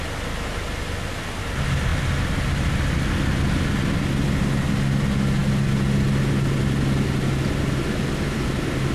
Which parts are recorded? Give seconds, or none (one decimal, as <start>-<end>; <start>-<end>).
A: 0.0-8.9

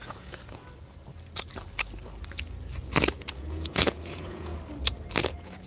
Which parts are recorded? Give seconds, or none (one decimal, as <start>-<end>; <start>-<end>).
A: 0.6-3.3; 4.5-5.2

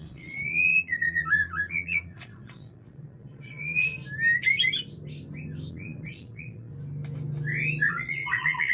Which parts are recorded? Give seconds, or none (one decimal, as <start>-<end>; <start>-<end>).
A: 3.9-5.7; 6.7-7.9

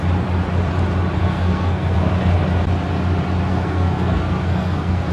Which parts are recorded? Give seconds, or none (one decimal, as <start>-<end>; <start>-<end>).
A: 0.0-1.2; 2.1-3.5

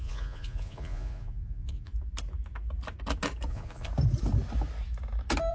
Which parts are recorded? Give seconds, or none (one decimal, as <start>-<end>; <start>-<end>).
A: 1.9-3.5; 3.9-5.5